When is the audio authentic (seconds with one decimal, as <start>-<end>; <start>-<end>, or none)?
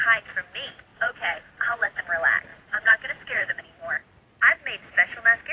0.0-0.9; 2.0-2.5; 3.6-5.5